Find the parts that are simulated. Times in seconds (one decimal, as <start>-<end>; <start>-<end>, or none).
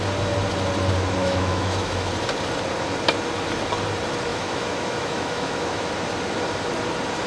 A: 1.2-2.1; 4.3-5.9